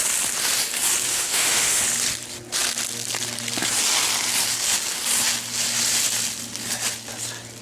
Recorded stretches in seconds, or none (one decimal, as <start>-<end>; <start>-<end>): 0.0-1.1; 1.8-7.6